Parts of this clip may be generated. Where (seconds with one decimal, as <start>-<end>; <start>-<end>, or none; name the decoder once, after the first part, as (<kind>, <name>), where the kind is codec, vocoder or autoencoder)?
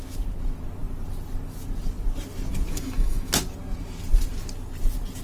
2.7-3.3 (autoencoder, DAC-VAE)